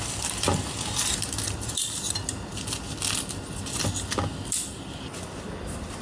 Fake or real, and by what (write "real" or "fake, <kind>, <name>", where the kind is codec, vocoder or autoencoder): real